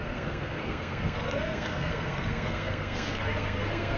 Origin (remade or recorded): remade